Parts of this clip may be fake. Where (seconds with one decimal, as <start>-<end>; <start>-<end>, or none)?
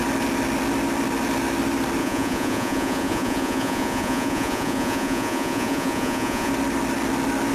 2.0-6.5